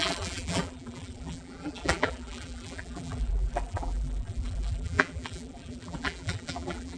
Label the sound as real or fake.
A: fake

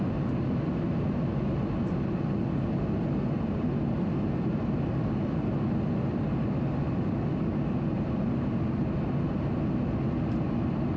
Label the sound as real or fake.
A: real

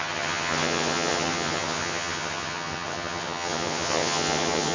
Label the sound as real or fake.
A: fake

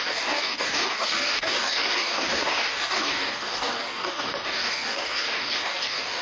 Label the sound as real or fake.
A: fake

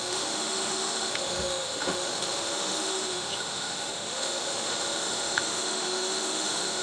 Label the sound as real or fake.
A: fake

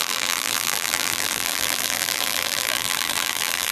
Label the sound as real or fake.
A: fake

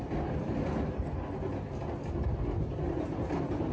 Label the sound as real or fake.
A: real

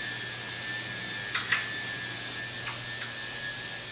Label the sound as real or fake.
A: real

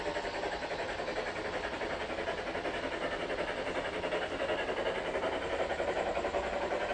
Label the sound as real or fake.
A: real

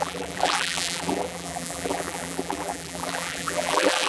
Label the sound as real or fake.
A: fake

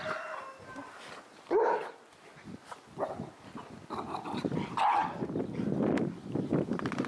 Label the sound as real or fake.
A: real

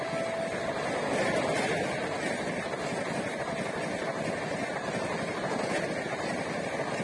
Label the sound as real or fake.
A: real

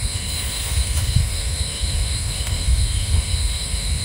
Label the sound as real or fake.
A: fake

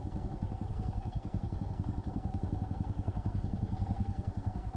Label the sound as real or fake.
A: fake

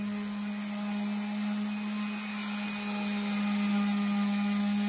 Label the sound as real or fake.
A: real